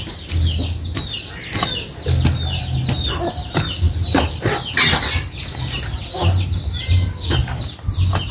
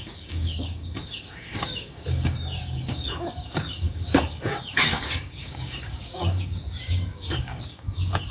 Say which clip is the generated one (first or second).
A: second